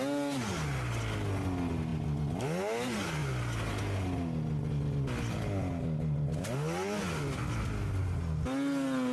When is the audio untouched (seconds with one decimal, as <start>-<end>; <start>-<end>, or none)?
0.0-9.1